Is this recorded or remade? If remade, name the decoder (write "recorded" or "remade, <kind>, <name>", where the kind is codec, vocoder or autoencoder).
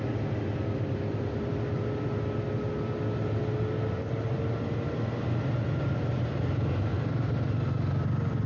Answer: recorded